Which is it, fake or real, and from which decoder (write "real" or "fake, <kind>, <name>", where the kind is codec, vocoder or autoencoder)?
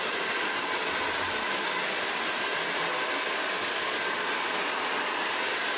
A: real